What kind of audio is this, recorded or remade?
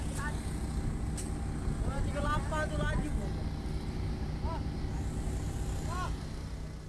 recorded